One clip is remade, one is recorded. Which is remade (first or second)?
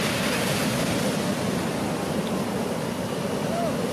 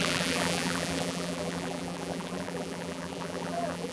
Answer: second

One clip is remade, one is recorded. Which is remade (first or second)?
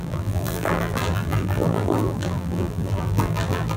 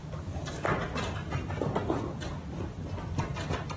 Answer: first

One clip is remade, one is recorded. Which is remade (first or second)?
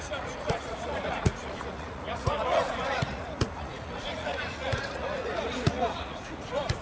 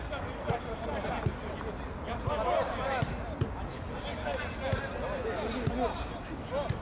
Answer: first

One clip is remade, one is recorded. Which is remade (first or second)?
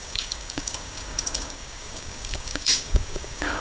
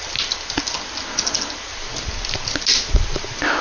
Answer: first